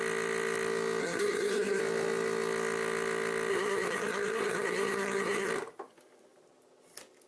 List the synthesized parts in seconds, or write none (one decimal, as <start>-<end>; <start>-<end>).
1.0-1.8; 3.5-5.5

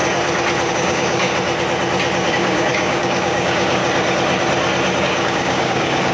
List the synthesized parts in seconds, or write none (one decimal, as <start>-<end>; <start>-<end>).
0.7-1.3; 2.3-3.8; 5.0-6.1

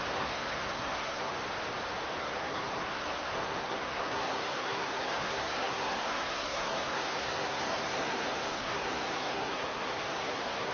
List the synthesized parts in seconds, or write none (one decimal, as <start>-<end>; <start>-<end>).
0.0-1.3; 2.2-10.7

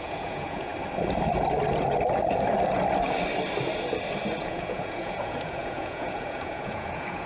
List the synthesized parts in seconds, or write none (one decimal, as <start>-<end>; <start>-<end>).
0.0-0.7; 4.4-7.3

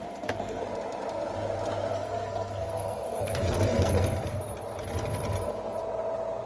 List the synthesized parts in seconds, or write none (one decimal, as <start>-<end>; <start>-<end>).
0.0-0.6; 1.9-4.4